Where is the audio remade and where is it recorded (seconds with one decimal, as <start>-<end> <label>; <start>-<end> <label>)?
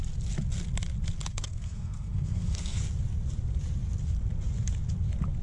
0.0-1.3 recorded; 1.3-2.8 remade; 2.8-5.4 recorded